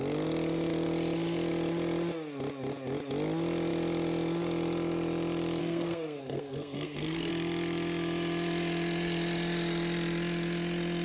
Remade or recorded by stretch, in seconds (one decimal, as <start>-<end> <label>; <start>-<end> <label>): 0.0-5.6 recorded; 5.6-7.3 remade; 7.3-11.0 recorded